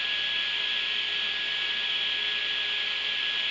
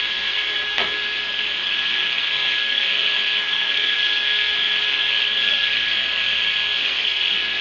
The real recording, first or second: first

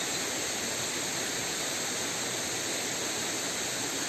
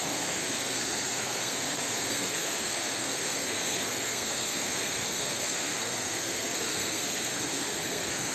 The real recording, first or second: first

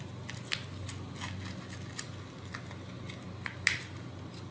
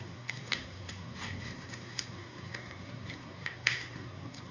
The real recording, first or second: first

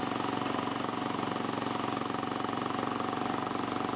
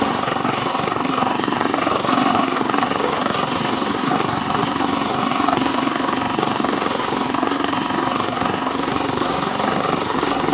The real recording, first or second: first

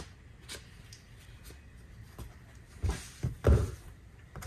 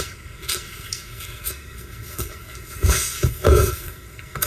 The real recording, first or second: first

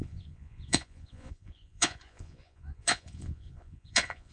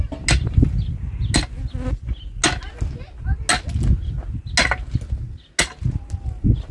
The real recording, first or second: second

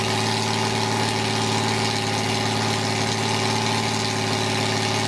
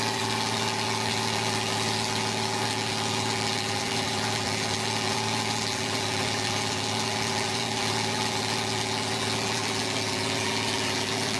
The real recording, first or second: first